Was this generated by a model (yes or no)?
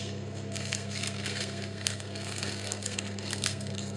yes